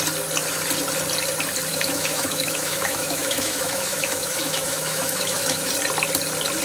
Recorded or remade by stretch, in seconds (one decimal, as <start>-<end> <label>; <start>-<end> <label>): 0.0-1.7 recorded; 1.7-5.7 remade; 5.7-6.6 recorded